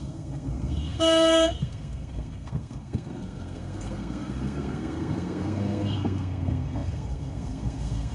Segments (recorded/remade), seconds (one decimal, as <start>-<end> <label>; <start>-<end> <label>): 0.0-8.1 remade